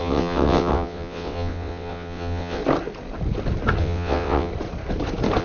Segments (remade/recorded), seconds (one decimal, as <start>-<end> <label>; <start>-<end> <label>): 0.0-2.6 remade; 2.6-3.8 recorded; 3.8-4.5 remade; 4.5-5.4 recorded